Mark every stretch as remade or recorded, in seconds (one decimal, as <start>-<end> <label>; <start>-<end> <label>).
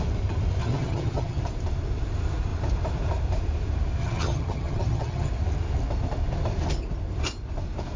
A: 0.0-0.6 recorded; 0.6-1.4 remade; 1.4-4.0 recorded; 4.0-5.3 remade; 5.3-8.0 recorded